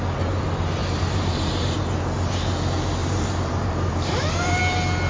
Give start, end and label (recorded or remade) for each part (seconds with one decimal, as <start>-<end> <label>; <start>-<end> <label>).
0.0-0.8 recorded; 0.8-1.7 remade; 1.7-3.0 recorded; 3.0-4.6 remade; 4.6-5.1 recorded